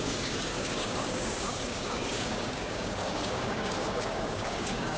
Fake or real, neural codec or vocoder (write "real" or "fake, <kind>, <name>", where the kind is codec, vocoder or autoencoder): fake, codec, DAC